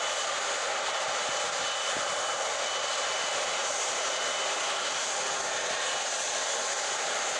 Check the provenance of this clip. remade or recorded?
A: recorded